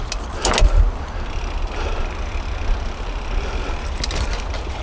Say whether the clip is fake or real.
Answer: real